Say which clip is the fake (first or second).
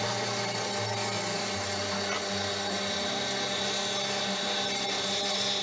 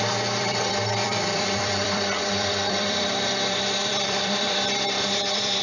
second